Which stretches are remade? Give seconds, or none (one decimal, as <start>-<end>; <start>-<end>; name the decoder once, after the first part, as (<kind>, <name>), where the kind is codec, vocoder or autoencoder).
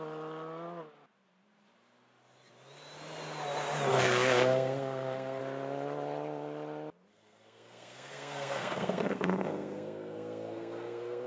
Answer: 3.9-5.4 (codec, SNAC); 7.1-11.3